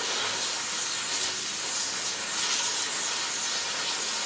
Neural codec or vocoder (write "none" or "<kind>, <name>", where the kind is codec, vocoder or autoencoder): none